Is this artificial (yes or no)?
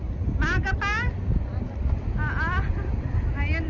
no